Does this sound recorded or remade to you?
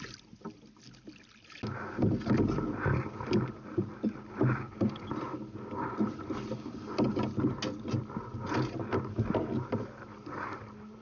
recorded